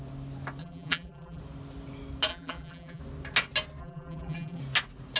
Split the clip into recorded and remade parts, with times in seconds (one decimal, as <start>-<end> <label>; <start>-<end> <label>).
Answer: 0.0-0.6 recorded; 0.6-1.4 remade; 1.4-2.3 recorded; 2.3-3.0 remade; 3.0-3.8 recorded; 3.8-4.6 remade; 4.6-5.2 recorded